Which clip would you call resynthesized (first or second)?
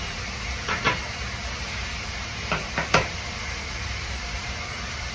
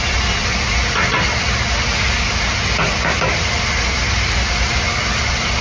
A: first